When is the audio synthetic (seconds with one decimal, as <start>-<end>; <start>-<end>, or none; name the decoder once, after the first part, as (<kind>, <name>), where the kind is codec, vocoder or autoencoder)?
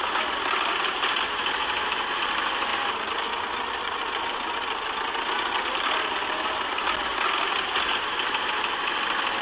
none